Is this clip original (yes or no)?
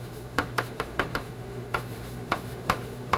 no